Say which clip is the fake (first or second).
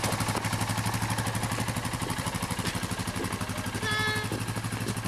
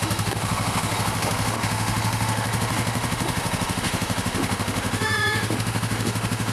second